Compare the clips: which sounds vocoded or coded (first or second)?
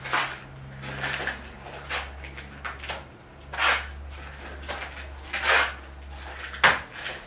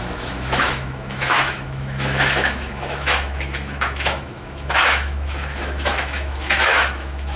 second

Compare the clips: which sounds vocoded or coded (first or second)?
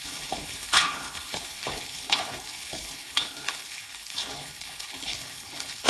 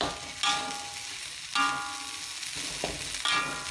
first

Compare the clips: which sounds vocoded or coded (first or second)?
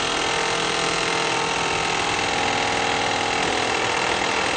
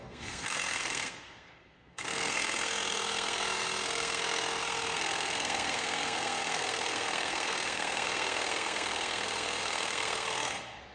second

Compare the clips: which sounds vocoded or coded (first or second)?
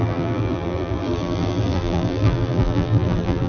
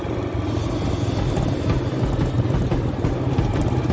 first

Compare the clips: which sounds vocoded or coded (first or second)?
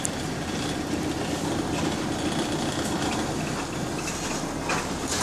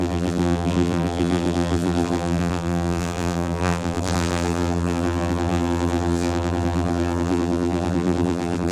second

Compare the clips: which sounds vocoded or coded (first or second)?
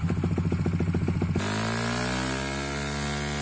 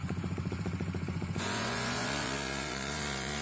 second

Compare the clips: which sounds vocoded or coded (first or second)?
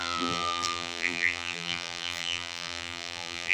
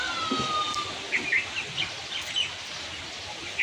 first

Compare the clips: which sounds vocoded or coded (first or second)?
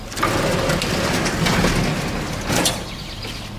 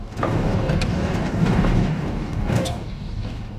second